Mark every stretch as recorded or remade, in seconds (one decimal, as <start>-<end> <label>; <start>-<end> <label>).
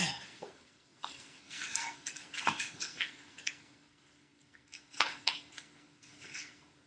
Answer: 0.0-6.9 remade